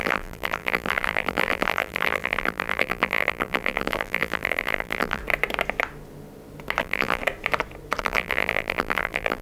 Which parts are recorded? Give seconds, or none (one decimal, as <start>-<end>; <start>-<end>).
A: 5.2-6.8; 7.2-8.0